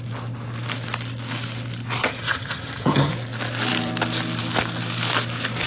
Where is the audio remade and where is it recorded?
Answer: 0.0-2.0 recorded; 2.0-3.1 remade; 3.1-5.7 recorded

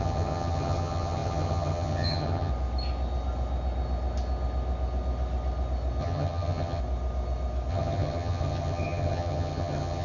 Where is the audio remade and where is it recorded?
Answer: 0.0-2.5 remade; 2.5-6.0 recorded; 6.0-6.8 remade; 6.8-7.7 recorded; 7.7-10.0 remade

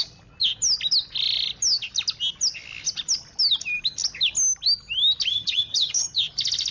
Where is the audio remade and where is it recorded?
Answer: 0.0-5.3 recorded; 5.3-6.1 remade; 6.1-6.7 recorded

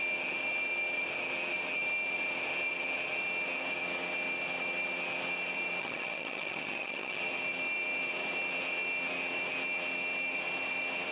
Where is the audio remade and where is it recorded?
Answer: 0.0-5.8 recorded; 5.8-7.2 remade; 7.2-11.1 recorded

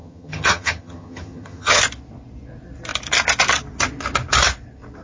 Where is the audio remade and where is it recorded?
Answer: 0.0-1.8 remade; 1.8-5.0 recorded